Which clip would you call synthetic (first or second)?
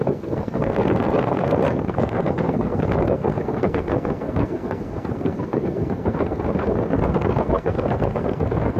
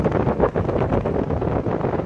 first